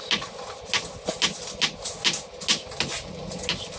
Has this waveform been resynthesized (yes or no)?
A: no